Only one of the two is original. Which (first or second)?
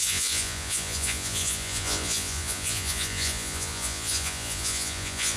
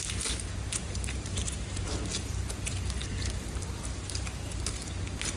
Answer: second